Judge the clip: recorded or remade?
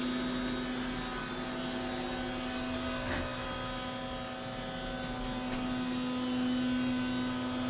recorded